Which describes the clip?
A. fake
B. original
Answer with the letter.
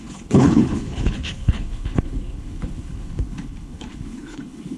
A